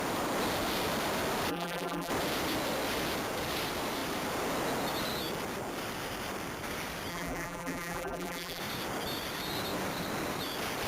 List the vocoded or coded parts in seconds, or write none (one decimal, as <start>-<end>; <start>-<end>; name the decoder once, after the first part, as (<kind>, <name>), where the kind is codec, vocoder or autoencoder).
1.5-2.1 (vocoder, BigVGAN v2); 7.1-8.6